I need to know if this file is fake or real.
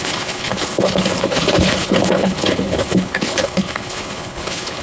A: fake